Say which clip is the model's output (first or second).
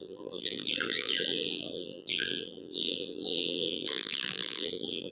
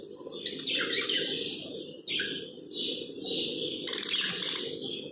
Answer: first